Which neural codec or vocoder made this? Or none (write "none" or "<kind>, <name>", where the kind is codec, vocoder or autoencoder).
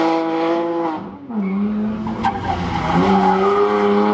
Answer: none